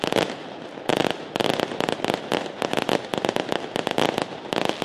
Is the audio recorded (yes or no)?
yes